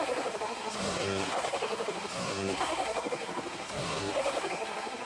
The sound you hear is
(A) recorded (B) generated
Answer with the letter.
B